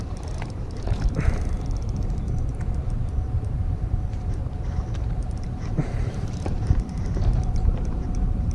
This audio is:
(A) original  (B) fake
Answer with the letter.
B